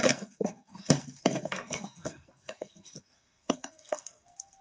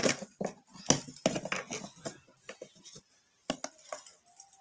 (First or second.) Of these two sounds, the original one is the second